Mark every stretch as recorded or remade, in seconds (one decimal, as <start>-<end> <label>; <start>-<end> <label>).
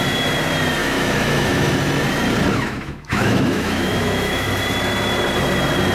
0.0-0.8 recorded; 0.8-1.7 remade; 1.7-2.5 recorded; 2.5-4.5 remade; 4.5-5.9 recorded